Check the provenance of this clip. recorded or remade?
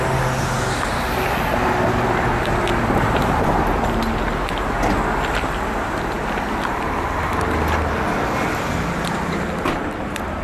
recorded